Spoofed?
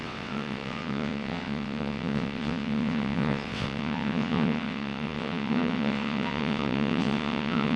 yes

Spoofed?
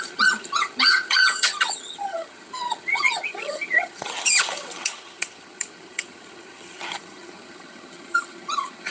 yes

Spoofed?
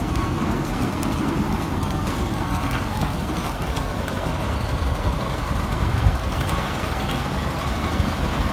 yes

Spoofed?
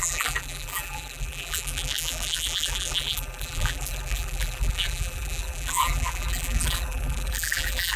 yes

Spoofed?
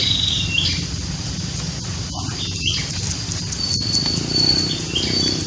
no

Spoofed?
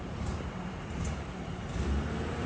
yes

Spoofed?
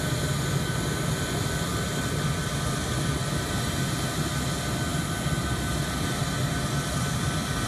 no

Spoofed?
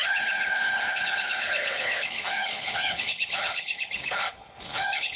yes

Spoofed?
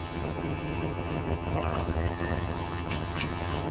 yes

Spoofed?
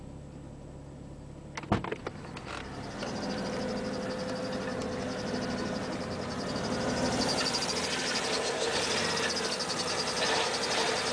no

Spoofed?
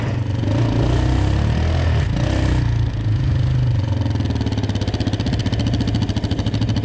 no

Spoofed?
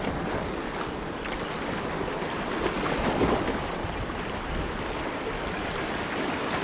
no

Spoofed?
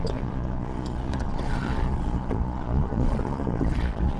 yes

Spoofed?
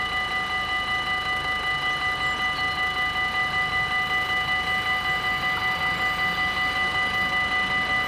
no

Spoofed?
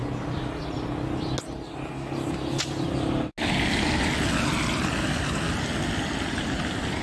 no